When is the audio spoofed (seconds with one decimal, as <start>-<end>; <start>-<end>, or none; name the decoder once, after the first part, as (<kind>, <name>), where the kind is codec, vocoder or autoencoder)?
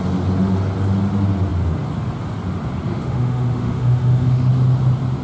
2.9-4.5 (autoencoder, DAC-VAE)